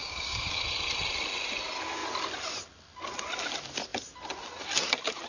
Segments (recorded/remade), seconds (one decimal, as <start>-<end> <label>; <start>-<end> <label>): 0.0-0.6 remade; 0.6-5.3 recorded